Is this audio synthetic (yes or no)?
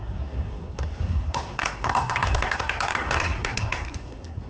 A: yes